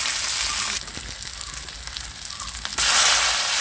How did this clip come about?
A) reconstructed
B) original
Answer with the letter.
B